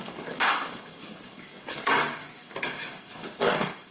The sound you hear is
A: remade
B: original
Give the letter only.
A